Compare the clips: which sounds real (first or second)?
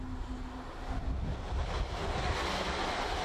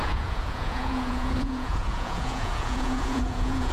first